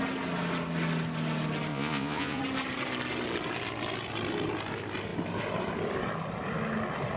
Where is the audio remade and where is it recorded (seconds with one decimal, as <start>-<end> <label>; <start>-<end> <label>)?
0.0-1.7 recorded; 1.7-2.4 remade; 2.4-7.2 recorded